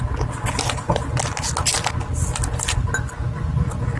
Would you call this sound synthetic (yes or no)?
no